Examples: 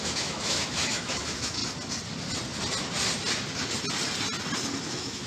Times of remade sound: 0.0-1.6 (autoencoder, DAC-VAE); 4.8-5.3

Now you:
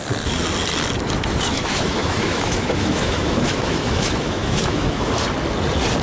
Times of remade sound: 1.5-5.1 (autoencoder, DAC-VAE)

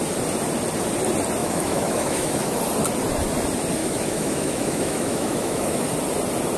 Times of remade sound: 1.4-2.6 (autoencoder, DAC-VAE); 3.8-5.9

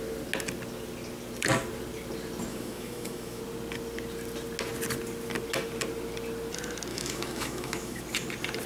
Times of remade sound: 2.5-3.4 (autoencoder, DAC-VAE); 6.9-8.0

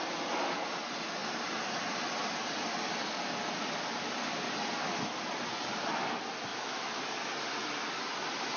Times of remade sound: 6.5-7.0 (autoencoder, DAC-VAE)

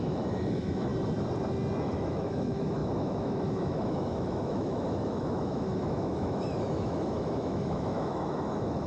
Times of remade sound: 0.0-0.9 (autoencoder, DAC-VAE); 1.8-8.9

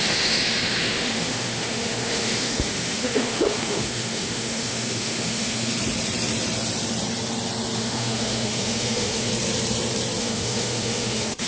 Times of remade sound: 0.0-5.7 (autoencoder, DAC-VAE); 7.8-9.3; 10.2-11.5